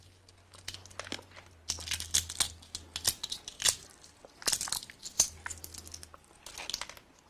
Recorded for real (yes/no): yes